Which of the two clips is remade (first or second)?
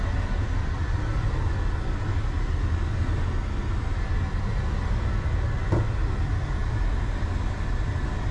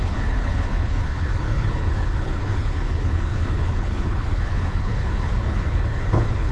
second